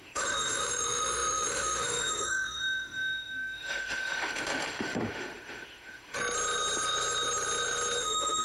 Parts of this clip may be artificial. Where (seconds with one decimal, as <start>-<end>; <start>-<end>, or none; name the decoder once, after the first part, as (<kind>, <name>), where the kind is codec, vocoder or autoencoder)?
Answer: 0.0-6.2 (autoencoder, DAC-VAE); 8.0-8.4